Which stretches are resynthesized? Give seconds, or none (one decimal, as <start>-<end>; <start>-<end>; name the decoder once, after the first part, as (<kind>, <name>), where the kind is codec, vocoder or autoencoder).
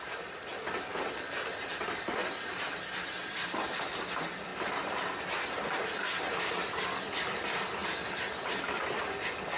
none